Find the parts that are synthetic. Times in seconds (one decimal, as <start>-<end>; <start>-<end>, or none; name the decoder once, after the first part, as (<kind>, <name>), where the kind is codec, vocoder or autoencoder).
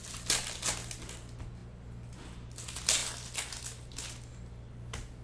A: none